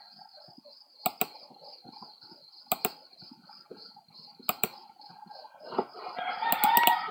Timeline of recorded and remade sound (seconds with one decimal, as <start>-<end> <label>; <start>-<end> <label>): 0.0-7.1 recorded